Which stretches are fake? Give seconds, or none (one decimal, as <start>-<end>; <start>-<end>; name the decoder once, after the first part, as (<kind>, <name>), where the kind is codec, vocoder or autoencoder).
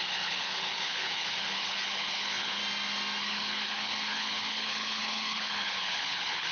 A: 0.0-2.6 (codec, HILCodec); 3.2-6.5